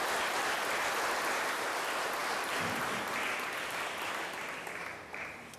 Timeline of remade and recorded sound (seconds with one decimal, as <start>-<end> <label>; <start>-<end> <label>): 0.0-5.6 recorded